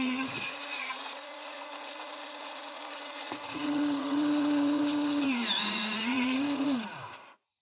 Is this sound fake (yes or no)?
yes